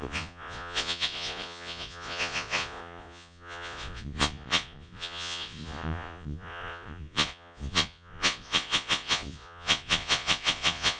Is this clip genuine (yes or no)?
no